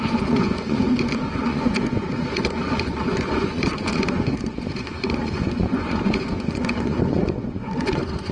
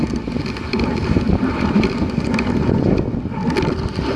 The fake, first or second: first